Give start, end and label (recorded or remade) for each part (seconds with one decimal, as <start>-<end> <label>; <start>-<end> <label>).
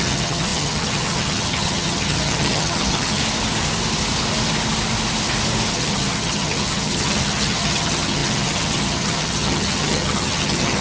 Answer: 0.0-3.2 remade; 3.2-5.7 recorded; 5.7-10.8 remade